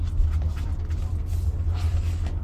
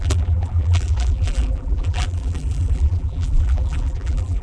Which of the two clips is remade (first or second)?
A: second